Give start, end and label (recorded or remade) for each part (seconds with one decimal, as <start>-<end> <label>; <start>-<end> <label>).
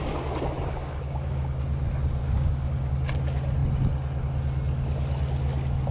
0.0-0.8 recorded; 0.8-1.6 remade; 1.6-2.2 recorded; 2.2-2.9 remade; 2.9-5.9 recorded